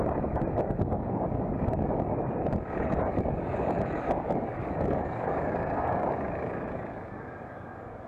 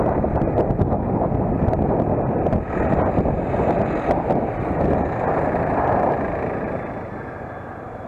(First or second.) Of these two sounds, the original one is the second